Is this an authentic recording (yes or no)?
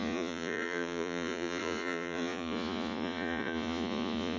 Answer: no